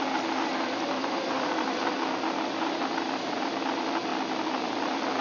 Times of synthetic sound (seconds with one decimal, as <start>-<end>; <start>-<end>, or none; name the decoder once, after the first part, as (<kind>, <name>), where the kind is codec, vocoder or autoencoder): 1.0-1.8 (vocoder, BigVGAN v2)